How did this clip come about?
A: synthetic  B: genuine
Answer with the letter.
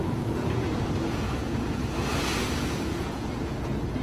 A